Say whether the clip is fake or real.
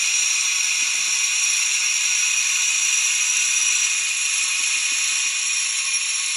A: real